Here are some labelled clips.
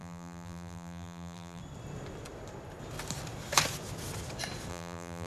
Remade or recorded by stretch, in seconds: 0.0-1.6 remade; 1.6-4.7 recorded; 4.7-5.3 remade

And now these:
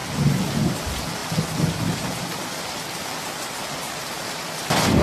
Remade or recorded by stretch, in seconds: 0.0-0.7 remade; 0.7-5.0 recorded

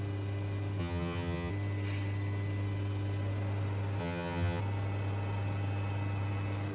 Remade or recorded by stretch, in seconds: 0.0-0.8 recorded; 0.8-1.5 remade; 1.5-4.0 recorded; 4.0-4.6 remade; 4.6-6.7 recorded

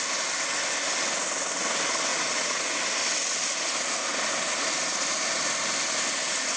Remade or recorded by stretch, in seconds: 0.0-2.1 recorded; 2.1-2.8 remade; 2.8-6.6 recorded

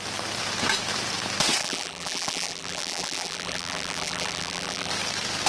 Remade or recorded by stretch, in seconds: 0.0-1.6 recorded; 1.6-4.9 remade; 4.9-5.5 recorded

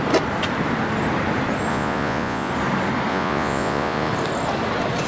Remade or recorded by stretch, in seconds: 0.0-1.7 recorded; 1.7-2.5 remade; 2.5-3.1 recorded; 3.1-4.1 remade; 4.1-5.1 recorded

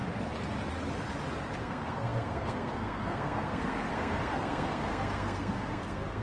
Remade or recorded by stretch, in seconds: 0.0-1.6 recorded; 1.6-6.2 remade